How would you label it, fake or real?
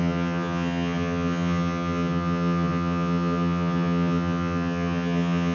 fake